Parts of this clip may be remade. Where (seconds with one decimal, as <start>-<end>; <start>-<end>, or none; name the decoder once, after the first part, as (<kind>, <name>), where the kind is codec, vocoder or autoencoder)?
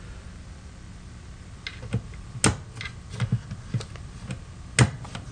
none